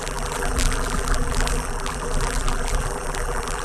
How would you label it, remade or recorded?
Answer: remade